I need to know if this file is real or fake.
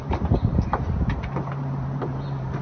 fake